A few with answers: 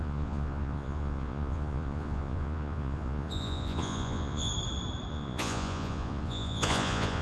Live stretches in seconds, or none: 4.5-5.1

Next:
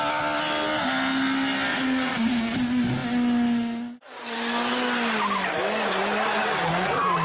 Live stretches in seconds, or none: 0.0-1.7; 2.4-7.2